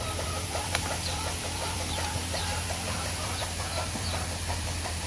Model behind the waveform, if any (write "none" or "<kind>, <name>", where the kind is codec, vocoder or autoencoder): vocoder, BigVGAN v2